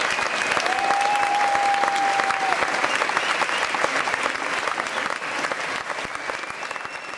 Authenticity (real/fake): real